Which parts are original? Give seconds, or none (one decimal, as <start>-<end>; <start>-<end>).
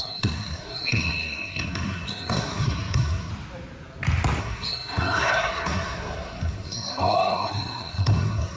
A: 3.3-4.4